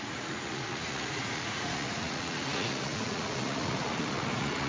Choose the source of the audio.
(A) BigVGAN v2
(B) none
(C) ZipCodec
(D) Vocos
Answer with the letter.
D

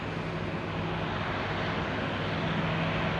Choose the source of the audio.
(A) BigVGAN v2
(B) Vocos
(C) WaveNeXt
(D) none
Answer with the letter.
D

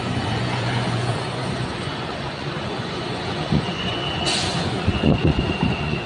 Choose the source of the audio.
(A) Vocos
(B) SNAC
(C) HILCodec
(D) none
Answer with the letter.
A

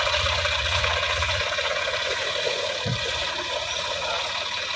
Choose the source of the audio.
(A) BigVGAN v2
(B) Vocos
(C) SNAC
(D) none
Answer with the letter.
B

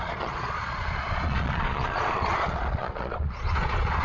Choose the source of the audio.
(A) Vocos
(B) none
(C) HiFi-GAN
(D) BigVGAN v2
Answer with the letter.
A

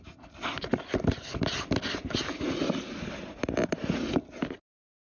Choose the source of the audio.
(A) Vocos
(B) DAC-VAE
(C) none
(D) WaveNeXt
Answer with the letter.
C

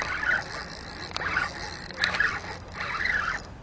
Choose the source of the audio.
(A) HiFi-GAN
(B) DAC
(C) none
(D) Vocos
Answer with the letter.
C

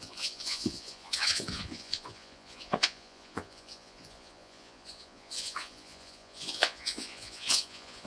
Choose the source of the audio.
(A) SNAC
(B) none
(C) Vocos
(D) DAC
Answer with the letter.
C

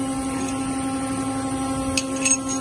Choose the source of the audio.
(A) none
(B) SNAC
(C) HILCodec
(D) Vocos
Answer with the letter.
A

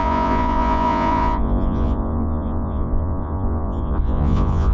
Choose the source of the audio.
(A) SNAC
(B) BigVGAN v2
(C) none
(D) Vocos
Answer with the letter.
D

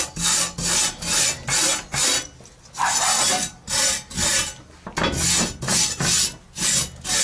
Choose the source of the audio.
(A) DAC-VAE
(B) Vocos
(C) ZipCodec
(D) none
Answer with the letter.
D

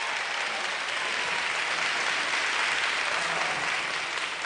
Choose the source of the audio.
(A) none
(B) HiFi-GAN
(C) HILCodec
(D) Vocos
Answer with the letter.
A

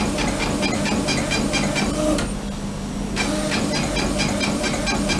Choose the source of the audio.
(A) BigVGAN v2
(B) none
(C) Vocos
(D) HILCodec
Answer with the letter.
B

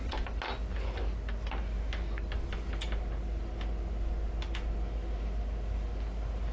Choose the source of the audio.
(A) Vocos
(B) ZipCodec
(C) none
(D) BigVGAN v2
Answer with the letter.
C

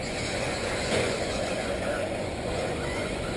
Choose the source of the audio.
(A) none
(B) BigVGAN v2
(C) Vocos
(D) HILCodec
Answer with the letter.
C